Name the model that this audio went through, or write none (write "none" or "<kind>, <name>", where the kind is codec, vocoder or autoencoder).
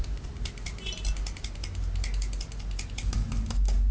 none